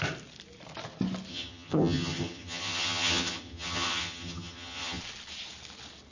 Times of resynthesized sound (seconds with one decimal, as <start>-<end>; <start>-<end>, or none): 1.3-5.0